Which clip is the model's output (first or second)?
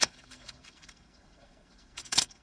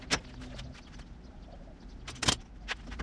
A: first